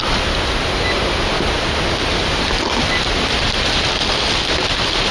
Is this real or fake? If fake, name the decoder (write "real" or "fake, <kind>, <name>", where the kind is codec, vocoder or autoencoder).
real